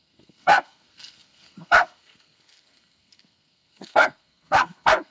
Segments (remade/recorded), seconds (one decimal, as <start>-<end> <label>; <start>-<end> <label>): 0.0-5.1 remade